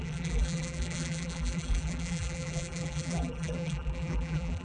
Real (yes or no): no